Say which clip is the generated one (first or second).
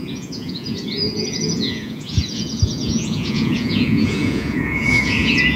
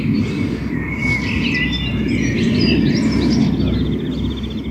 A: first